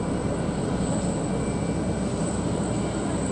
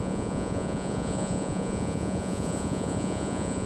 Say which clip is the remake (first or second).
second